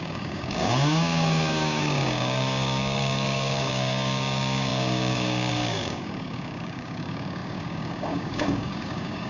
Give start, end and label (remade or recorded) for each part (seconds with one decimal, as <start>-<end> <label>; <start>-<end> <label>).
0.0-9.3 remade